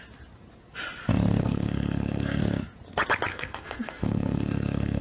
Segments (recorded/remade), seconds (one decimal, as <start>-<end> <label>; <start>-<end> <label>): 0.0-1.4 recorded; 1.4-2.4 remade; 2.4-3.3 recorded; 3.3-5.0 remade